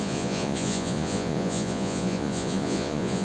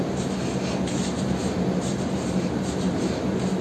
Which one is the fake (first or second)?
first